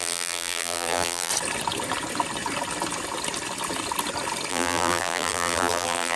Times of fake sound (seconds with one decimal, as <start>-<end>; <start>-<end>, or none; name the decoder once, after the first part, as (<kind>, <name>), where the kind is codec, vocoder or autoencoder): 0.0-1.3 (vocoder, BigVGAN v2); 4.5-6.2